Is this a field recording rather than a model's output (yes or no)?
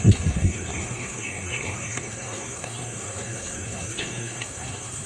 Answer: no